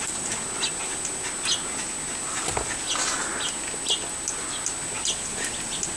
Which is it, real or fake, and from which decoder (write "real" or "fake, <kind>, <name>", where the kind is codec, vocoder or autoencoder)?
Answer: real